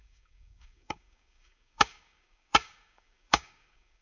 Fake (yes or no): yes